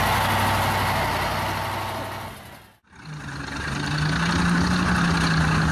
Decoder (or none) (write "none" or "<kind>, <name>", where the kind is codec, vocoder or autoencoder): none